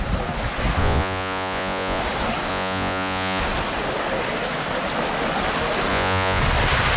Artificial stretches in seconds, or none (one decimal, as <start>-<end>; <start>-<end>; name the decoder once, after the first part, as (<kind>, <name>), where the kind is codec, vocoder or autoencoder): 0.8-2.0 (vocoder, Vocos); 2.5-3.4; 5.9-6.4